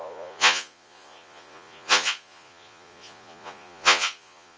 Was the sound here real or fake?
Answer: fake